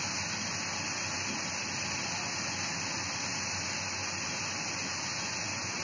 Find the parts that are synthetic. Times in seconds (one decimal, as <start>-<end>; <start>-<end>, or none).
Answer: 4.8-5.8